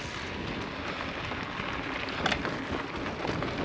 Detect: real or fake real